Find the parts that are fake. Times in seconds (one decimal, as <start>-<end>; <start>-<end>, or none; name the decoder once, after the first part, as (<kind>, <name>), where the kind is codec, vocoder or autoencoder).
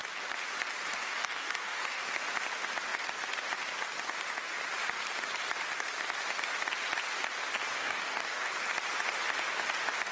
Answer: 0.9-2.0 (codec, DAC); 7.8-8.5